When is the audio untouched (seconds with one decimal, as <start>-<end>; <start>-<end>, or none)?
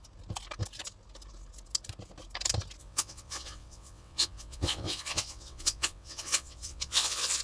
0.0-2.8